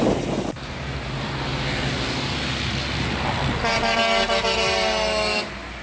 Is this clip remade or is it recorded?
recorded